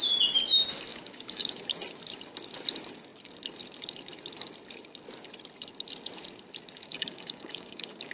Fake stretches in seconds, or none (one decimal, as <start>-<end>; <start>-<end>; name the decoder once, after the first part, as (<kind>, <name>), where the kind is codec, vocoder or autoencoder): 0.9-1.6 (codec, DAC); 6.9-8.1